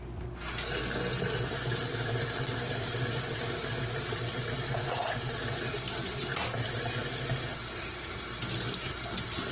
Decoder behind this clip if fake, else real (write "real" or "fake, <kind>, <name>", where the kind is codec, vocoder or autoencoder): real